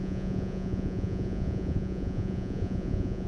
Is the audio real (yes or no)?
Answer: no